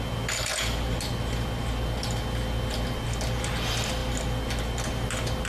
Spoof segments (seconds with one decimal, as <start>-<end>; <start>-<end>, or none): none

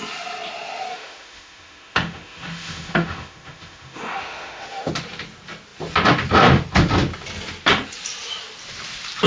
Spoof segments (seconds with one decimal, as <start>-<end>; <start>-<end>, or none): 0.9-4.9

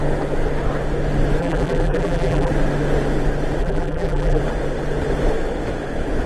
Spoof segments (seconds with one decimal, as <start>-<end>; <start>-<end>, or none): 1.4-2.5; 3.6-4.4